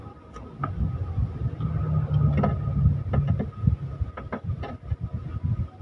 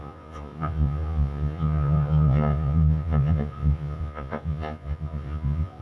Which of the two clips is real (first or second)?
first